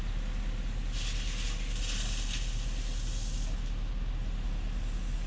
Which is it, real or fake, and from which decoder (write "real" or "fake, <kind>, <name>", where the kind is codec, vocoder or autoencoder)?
real